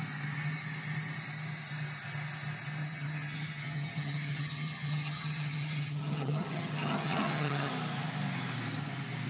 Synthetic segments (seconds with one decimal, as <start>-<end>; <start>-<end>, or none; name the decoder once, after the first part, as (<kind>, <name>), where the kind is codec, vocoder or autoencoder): 2.8-7.7 (vocoder, HiFi-GAN)

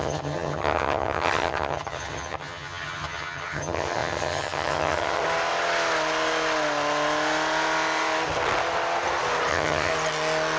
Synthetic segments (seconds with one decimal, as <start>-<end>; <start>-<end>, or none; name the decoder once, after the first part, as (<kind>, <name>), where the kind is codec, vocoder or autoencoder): 0.0-5.2 (vocoder, HiFi-GAN); 9.5-9.9

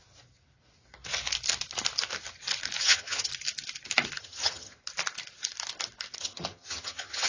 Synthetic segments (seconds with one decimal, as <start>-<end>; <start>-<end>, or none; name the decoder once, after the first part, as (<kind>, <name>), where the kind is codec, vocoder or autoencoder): 2.8-3.3 (vocoder, HiFi-GAN); 4.2-4.8; 6.2-7.3

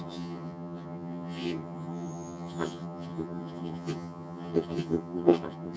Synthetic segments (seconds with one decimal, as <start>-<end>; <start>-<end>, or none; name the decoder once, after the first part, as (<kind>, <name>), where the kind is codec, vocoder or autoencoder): 0.0-5.8 (vocoder, HiFi-GAN)

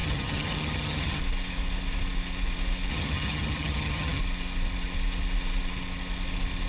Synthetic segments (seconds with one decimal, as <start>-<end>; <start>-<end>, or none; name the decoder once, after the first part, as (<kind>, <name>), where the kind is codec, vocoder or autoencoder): 0.0-1.2 (vocoder, HiFi-GAN); 2.9-4.2

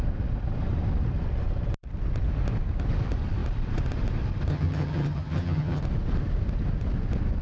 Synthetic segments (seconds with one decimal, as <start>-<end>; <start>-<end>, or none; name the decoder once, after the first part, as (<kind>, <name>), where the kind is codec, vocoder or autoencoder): 4.5-5.8 (vocoder, HiFi-GAN)

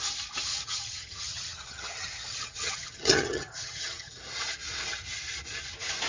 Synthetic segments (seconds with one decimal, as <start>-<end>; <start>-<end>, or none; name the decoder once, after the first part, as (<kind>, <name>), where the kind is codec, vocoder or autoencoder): 0.5-4.2 (vocoder, HiFi-GAN)

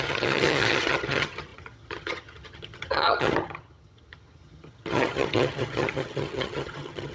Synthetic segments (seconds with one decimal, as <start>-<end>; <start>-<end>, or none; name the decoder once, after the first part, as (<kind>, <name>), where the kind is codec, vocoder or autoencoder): 0.0-7.1 (vocoder, HiFi-GAN)